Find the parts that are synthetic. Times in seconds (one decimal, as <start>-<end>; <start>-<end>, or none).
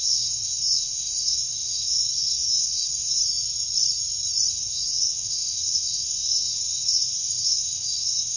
0.0-3.2; 4.5-8.4